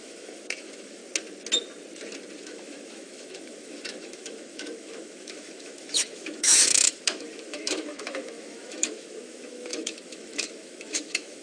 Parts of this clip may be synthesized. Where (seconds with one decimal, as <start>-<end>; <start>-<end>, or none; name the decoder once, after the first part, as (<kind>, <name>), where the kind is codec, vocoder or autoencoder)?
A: 0.0-1.0 (autoencoder, DAC-VAE); 2.4-11.4